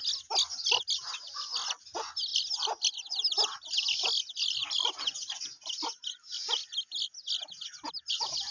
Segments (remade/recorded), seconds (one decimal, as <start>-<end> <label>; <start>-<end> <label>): 0.0-8.5 recorded